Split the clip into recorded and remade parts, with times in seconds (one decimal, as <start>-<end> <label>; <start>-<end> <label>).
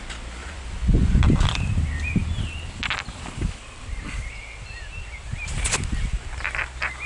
0.0-0.4 recorded; 0.4-1.2 remade; 1.2-7.1 recorded